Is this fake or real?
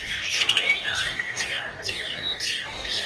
fake